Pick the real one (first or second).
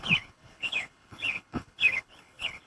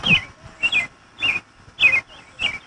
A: second